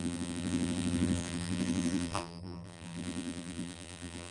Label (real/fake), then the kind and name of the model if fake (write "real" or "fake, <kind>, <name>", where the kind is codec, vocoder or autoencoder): fake, vocoder, BigVGAN v2